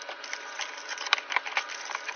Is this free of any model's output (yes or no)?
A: no